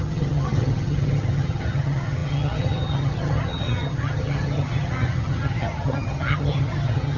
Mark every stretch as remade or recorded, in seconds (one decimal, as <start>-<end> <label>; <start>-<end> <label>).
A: 0.0-7.2 remade